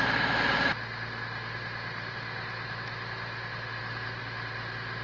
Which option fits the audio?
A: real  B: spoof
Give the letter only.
A